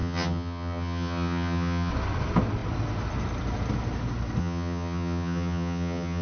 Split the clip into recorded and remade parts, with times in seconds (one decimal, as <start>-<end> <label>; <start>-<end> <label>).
0.0-1.9 remade; 1.9-4.4 recorded; 4.4-6.2 remade